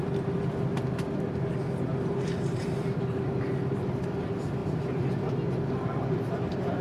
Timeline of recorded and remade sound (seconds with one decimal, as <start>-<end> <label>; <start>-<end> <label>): 0.0-1.9 recorded; 1.9-3.3 remade; 3.3-4.6 recorded; 4.6-5.1 remade; 5.1-6.8 recorded